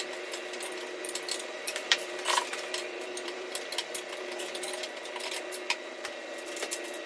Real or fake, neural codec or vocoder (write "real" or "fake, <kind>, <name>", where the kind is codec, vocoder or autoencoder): fake, vocoder, BigVGAN v2